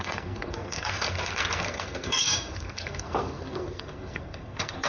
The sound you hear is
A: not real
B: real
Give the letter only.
A